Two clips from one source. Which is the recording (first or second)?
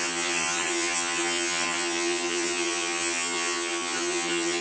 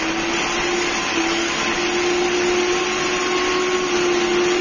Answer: second